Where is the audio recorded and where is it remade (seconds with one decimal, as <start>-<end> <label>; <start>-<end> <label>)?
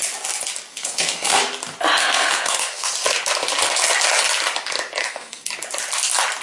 0.0-0.7 recorded; 0.7-1.4 remade; 1.4-2.0 recorded; 2.0-2.9 remade; 2.9-5.0 recorded; 5.0-5.5 remade; 5.5-6.4 recorded